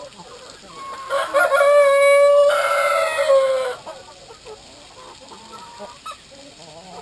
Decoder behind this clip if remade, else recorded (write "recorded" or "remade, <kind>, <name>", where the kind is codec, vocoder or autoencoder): recorded